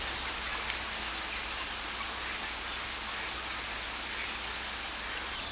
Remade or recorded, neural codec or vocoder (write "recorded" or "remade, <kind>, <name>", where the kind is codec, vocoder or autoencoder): recorded